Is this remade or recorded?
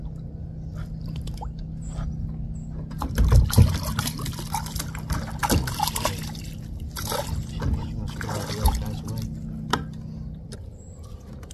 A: recorded